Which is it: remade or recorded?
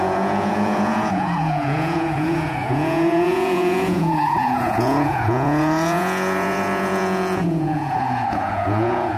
remade